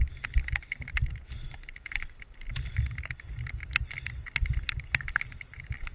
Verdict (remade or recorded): recorded